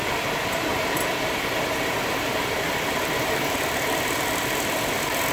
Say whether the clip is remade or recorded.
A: recorded